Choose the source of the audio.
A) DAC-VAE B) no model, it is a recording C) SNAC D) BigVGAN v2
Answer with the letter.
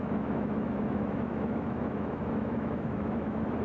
A